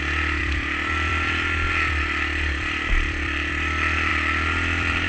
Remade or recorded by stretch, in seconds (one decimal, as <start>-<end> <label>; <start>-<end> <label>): 0.0-0.4 recorded; 0.4-3.5 remade; 3.5-4.1 recorded; 4.1-5.1 remade